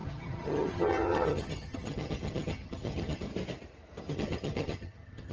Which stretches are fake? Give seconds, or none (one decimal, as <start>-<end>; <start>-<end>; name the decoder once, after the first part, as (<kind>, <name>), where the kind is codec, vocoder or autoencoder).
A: 0.0-3.3 (vocoder, HiFi-GAN); 4.1-5.3